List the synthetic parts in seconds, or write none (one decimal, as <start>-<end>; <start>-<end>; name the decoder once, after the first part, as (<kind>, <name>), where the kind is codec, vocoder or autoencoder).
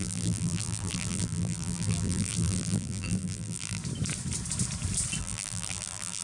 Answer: 0.0-3.8 (vocoder, BigVGAN v2); 5.2-6.2